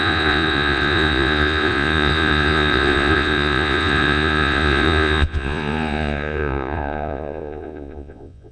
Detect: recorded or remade remade